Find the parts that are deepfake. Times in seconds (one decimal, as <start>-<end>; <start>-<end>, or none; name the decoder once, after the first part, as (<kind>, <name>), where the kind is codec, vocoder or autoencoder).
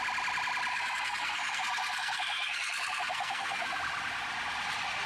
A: 0.7-3.8 (codec, SNAC)